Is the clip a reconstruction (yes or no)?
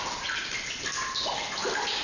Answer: no